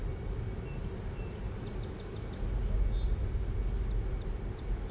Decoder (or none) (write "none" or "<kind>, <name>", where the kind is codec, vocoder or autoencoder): none